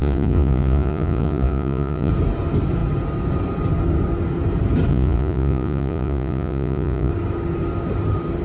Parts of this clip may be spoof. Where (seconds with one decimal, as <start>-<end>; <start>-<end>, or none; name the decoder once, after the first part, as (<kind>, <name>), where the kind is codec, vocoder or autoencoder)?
0.0-2.1 (vocoder, Vocos); 4.9-7.1